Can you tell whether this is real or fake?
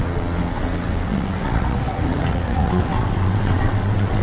fake